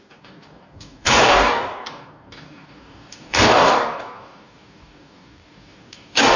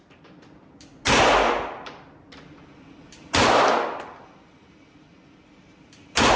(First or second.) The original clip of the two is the second